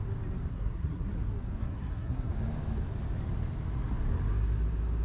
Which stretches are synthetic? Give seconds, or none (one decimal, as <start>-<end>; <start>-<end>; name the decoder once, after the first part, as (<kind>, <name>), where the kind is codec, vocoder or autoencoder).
0.5-1.1 (codec, SNAC); 1.6-2.3